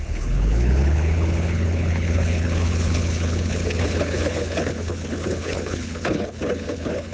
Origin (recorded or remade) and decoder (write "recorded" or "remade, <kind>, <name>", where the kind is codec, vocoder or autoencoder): remade, codec, HILCodec